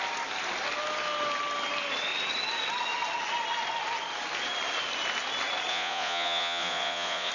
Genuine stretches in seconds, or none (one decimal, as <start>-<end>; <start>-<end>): 0.0-5.7